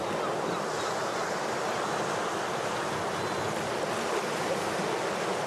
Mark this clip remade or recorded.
recorded